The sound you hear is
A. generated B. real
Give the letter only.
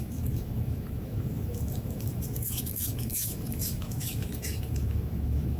A